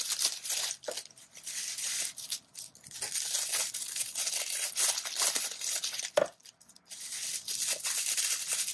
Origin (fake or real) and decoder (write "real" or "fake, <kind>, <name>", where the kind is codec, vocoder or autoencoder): real